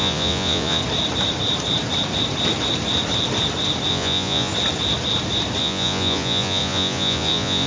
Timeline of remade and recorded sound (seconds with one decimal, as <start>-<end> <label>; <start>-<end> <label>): 0.0-0.8 remade; 0.8-3.9 recorded; 3.9-4.5 remade; 4.5-5.6 recorded; 5.6-7.7 remade